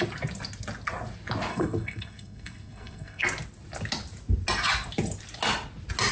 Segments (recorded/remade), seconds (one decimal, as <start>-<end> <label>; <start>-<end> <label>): 0.0-1.5 recorded; 1.5-3.2 remade; 3.2-6.1 recorded